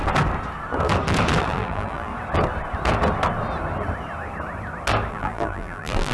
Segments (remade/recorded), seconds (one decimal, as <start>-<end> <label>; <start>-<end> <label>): 0.0-1.4 recorded; 1.4-2.1 remade; 2.1-5.1 recorded; 5.1-6.1 remade